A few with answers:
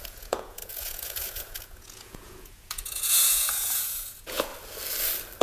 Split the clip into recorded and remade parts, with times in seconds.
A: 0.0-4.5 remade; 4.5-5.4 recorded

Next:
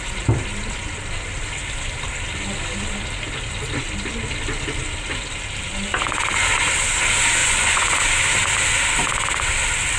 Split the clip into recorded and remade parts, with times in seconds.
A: 0.0-7.4 recorded; 7.4-8.0 remade; 8.0-10.0 recorded

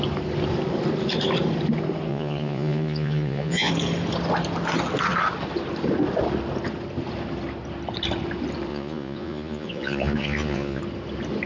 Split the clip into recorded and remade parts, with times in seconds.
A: 0.0-2.1 recorded; 2.1-3.7 remade; 3.7-8.7 recorded; 8.7-10.8 remade; 10.8-11.5 recorded

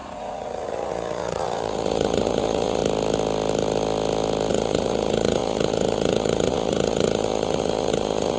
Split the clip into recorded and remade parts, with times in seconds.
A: 0.0-2.8 remade; 2.8-4.5 recorded; 4.5-8.4 remade

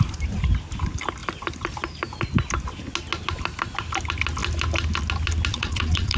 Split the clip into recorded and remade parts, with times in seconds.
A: 0.0-5.5 recorded; 5.5-6.2 remade

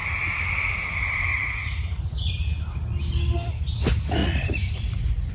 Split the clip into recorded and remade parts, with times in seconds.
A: 0.0-1.3 recorded; 1.3-2.5 remade; 2.5-4.2 recorded; 4.2-5.3 remade